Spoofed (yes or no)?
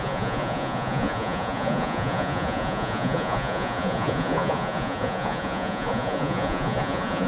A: yes